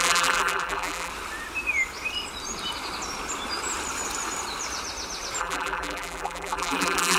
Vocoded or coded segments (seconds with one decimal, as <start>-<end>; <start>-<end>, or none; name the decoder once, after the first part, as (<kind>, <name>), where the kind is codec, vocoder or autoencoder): 0.0-1.1 (vocoder, BigVGAN v2); 5.4-7.2